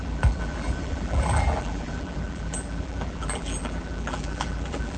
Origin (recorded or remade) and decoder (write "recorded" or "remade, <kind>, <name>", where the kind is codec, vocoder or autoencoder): remade, vocoder, BigVGAN v2